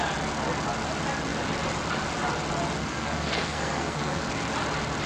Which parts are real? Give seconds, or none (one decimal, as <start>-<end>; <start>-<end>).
0.0-2.8; 4.2-5.1